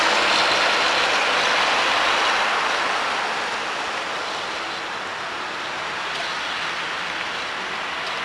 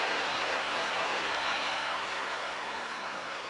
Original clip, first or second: first